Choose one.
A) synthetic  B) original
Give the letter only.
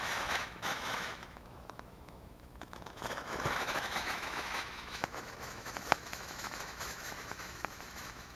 A